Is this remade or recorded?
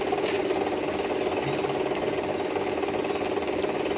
recorded